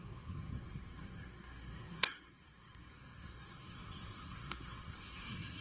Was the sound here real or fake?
fake